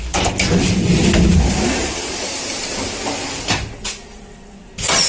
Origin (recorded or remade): recorded